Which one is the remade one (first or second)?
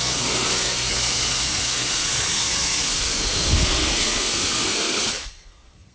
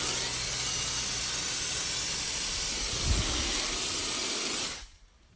first